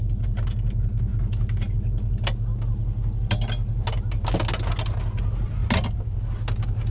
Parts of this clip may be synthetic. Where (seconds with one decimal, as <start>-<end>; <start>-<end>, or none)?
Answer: none

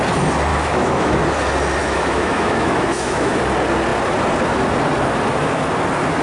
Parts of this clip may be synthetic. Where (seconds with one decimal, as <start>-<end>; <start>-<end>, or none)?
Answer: 0.5-1.2; 1.8-3.4

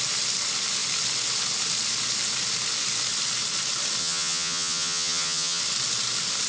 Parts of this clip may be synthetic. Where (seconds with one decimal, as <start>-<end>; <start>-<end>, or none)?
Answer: 4.0-5.6

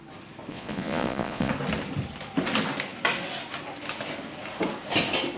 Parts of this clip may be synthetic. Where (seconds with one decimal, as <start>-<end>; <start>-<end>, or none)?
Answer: 0.5-1.5

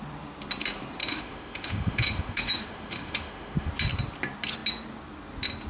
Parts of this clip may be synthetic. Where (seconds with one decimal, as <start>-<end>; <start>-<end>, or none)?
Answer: 1.0-3.7

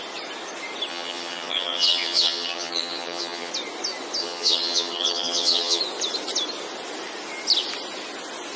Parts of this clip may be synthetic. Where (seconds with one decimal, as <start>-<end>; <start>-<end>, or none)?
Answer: 0.9-3.5; 4.2-5.8

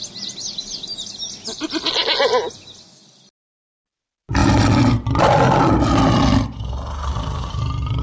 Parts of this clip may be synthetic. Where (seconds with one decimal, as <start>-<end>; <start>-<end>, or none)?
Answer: none

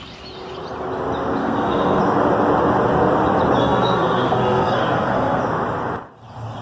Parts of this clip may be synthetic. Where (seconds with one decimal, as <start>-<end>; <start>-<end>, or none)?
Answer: 1.4-2.0; 3.6-5.4